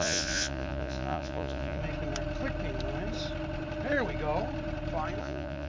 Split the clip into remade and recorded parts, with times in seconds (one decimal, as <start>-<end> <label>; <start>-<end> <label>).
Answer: 0.0-1.8 remade; 1.8-5.2 recorded; 5.2-5.7 remade